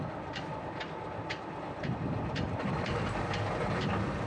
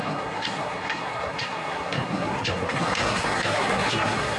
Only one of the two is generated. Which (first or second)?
second